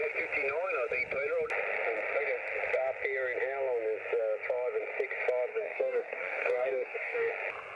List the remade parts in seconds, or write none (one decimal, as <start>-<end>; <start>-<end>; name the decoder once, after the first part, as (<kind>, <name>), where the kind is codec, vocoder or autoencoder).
5.5-7.3 (codec, DAC)